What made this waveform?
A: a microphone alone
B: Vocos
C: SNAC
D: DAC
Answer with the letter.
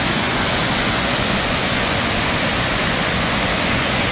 B